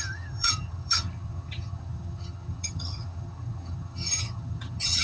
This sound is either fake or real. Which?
fake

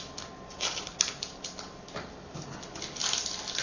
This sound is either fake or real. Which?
real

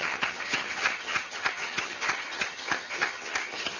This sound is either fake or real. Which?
fake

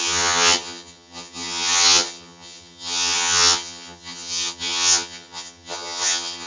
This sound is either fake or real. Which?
fake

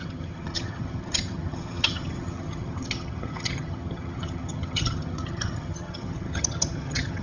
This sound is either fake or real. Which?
fake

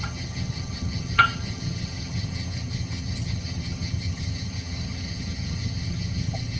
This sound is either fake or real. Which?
fake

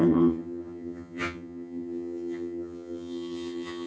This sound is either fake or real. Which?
fake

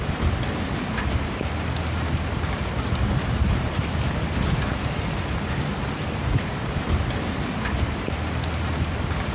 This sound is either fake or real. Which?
real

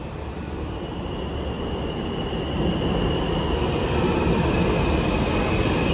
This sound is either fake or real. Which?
real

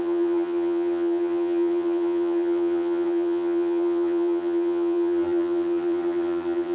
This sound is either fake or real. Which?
fake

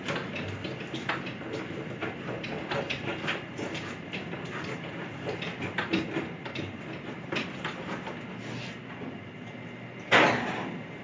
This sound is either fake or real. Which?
real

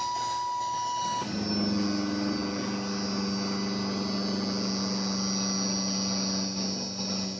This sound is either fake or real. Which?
real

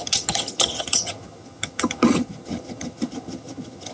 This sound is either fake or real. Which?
fake